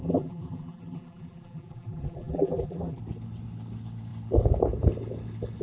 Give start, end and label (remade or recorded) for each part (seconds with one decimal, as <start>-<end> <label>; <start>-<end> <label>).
0.0-3.0 remade; 3.0-5.6 recorded